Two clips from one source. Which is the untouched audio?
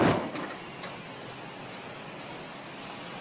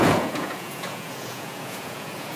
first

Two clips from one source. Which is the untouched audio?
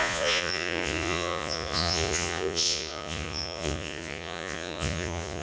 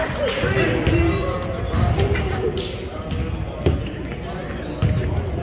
second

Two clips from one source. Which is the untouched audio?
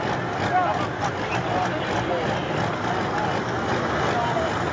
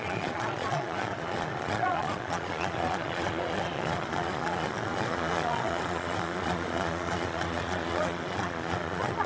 first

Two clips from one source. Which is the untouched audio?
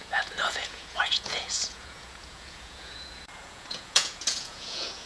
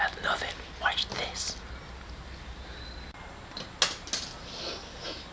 second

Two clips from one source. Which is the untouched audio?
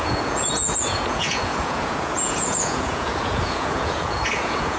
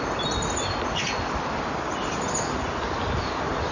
second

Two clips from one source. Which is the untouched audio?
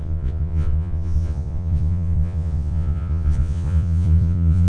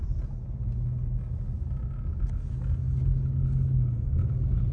second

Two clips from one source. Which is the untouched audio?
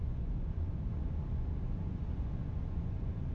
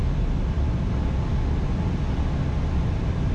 second